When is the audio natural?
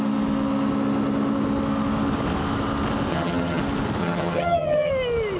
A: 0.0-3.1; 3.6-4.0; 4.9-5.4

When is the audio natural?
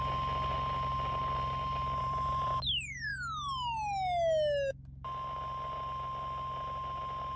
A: 0.0-2.0; 2.6-7.4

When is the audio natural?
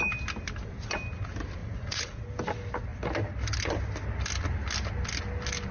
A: 0.0-1.6; 2.2-5.7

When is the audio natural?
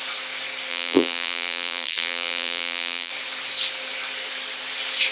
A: 0.0-0.7; 3.1-5.1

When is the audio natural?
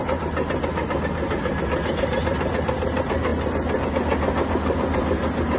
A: 0.0-5.6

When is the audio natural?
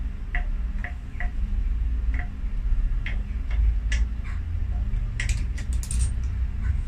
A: 0.0-0.8; 1.6-6.9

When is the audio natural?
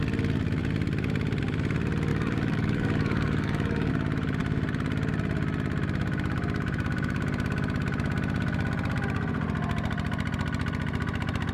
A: 0.0-2.1; 3.9-11.5